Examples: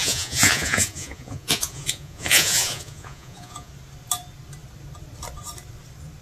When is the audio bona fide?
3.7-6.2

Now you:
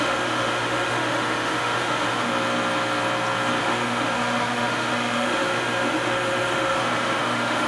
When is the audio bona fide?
2.3-3.6

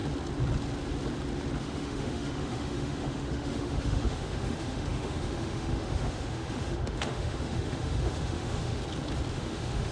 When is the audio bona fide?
0.0-1.6; 8.8-9.3